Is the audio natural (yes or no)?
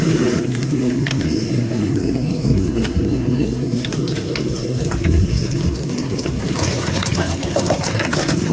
no